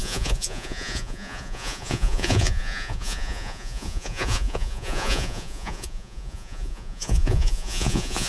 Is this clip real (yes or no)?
no